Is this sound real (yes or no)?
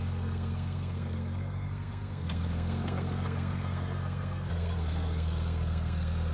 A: no